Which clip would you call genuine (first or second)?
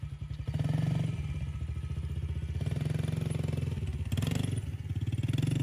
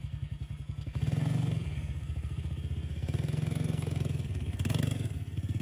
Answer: first